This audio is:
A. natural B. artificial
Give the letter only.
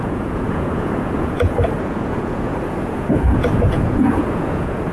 B